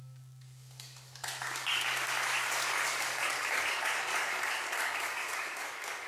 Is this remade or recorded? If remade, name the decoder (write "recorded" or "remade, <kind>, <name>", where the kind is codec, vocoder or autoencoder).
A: remade, codec, DAC